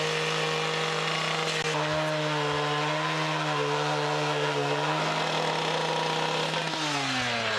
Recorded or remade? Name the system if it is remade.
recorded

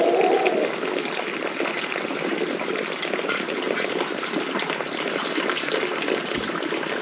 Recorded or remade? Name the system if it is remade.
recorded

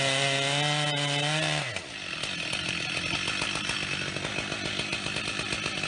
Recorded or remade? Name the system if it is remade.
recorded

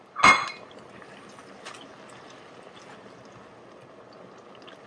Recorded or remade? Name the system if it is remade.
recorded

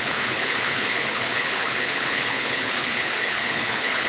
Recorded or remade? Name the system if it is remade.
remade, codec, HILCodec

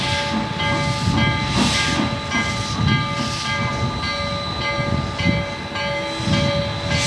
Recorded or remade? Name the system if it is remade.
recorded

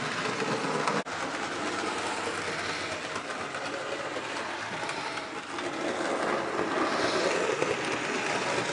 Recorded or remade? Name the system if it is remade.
recorded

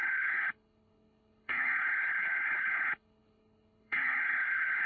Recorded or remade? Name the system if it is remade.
remade, codec, HILCodec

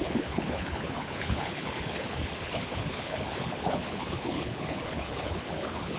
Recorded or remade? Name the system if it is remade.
remade, codec, HILCodec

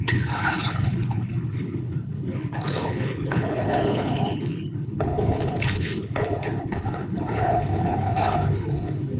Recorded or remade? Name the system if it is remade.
remade, codec, HILCodec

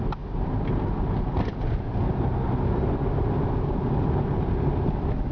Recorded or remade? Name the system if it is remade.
recorded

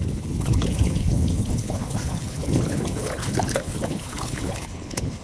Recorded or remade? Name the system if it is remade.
remade, codec, HILCodec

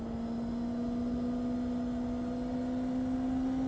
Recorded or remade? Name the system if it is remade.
recorded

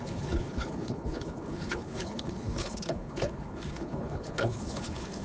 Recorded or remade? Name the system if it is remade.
remade, codec, HILCodec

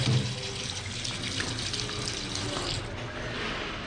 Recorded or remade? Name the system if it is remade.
recorded